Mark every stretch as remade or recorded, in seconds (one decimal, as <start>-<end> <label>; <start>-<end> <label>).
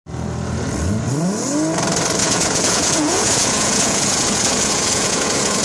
0.0-2.2 recorded; 2.2-5.6 remade